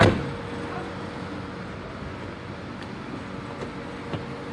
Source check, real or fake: real